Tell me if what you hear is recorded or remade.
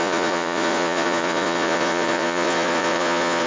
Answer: remade